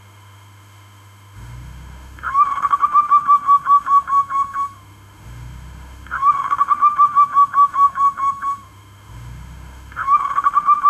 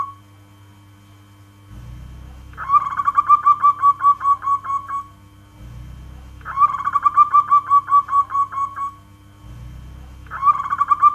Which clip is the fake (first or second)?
first